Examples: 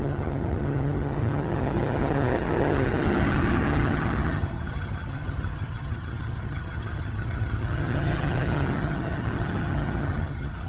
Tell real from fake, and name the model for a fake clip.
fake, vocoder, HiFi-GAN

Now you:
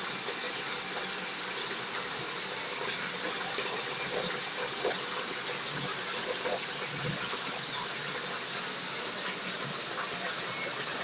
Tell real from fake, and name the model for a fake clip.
real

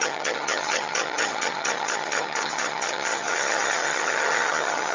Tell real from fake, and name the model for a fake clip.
fake, vocoder, HiFi-GAN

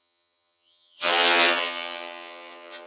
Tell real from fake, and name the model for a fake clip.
fake, vocoder, HiFi-GAN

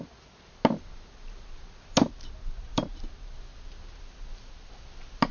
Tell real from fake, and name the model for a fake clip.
real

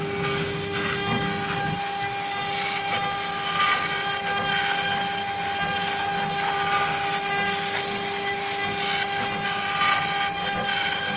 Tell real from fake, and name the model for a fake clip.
real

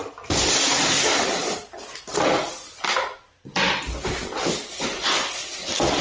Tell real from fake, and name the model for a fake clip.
real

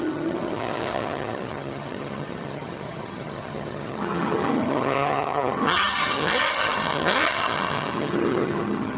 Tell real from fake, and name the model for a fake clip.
fake, vocoder, HiFi-GAN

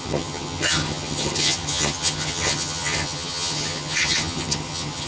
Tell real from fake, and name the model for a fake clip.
fake, vocoder, HiFi-GAN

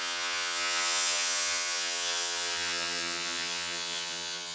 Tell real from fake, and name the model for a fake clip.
fake, vocoder, HiFi-GAN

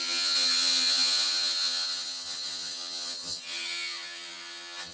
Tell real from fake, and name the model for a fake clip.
fake, vocoder, HiFi-GAN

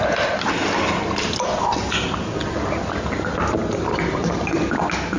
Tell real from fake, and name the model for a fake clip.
real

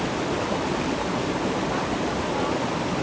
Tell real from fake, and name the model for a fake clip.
real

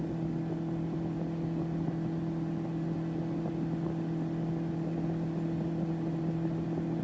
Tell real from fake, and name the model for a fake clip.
real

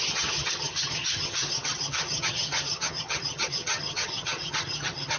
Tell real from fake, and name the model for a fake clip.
fake, vocoder, HiFi-GAN